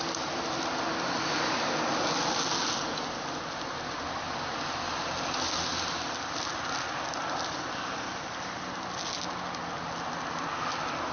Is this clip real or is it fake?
real